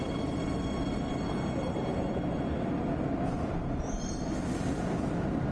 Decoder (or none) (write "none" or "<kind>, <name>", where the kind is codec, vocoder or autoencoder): none